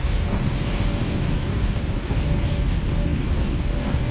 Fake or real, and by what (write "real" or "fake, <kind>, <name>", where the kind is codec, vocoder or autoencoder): fake, codec, DAC